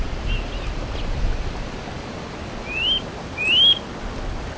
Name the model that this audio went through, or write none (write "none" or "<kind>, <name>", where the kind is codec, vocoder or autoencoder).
none